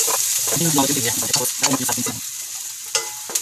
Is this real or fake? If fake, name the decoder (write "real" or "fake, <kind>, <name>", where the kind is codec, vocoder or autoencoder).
real